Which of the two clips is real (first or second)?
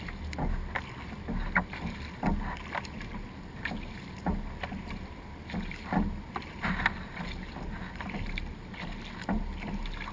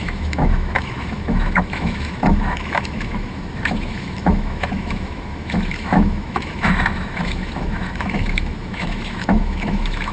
first